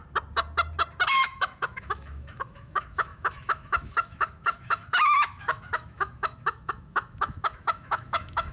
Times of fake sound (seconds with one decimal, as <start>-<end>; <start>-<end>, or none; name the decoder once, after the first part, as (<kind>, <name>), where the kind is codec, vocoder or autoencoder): 1.1-8.5 (autoencoder, DAC-VAE)